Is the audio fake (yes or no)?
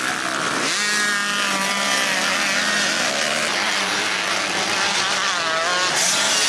no